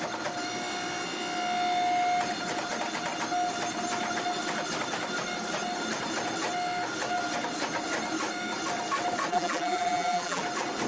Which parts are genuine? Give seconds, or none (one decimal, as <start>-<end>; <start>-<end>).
0.0-9.3; 10.4-10.9